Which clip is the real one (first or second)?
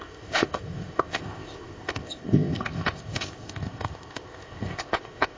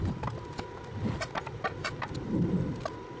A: second